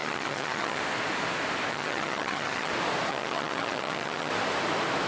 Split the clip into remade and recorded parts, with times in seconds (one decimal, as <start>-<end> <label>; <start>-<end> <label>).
0.0-0.8 remade; 0.8-1.7 recorded; 1.7-2.7 remade; 2.7-3.1 recorded; 3.1-4.3 remade; 4.3-5.1 recorded